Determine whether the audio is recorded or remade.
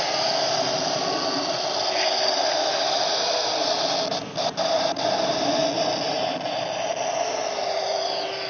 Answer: recorded